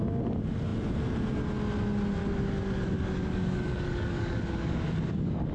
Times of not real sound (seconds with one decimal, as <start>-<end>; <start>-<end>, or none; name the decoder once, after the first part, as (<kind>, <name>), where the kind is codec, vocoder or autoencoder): 2.2-5.5 (codec, DAC)